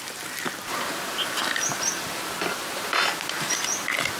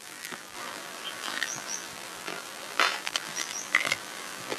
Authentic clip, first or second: first